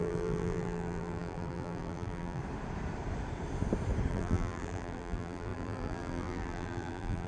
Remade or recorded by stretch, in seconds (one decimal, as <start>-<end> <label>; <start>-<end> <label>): 0.0-2.4 remade; 2.4-4.1 recorded; 4.1-7.3 remade